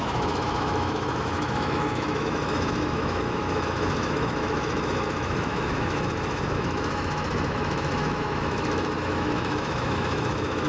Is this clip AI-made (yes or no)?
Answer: yes